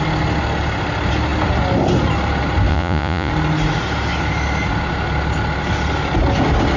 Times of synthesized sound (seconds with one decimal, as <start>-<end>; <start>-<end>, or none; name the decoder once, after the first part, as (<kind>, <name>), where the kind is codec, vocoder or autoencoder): 2.7-3.3 (vocoder, Vocos)